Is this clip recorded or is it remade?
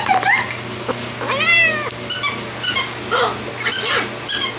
recorded